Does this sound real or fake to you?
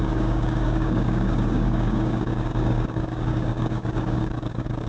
fake